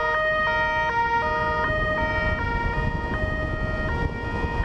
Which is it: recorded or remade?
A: recorded